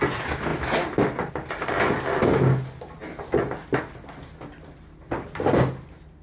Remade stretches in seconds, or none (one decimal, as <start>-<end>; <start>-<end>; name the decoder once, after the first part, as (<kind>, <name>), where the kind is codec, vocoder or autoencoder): none